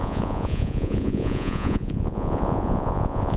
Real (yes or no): no